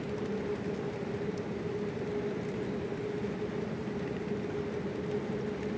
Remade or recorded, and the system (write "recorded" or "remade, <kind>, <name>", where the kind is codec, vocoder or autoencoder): recorded